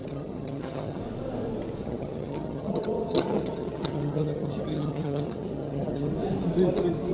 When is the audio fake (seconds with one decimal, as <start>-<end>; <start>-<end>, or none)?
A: 0.0-1.0; 1.8-6.1